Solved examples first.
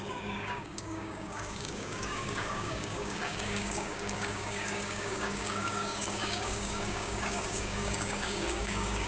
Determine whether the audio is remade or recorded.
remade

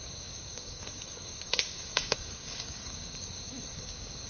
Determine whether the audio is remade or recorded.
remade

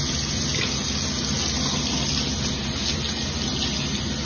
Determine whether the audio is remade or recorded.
recorded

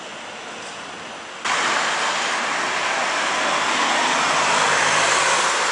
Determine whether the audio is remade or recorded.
recorded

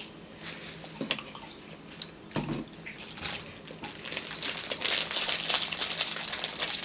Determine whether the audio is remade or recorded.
recorded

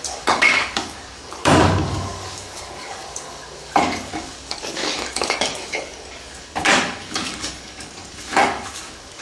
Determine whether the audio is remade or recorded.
remade